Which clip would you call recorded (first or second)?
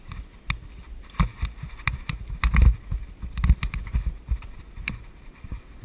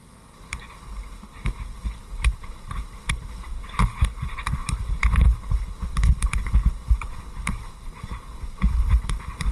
first